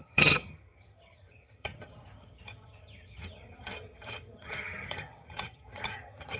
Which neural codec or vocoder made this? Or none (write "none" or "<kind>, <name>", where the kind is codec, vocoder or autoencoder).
vocoder, HiFi-GAN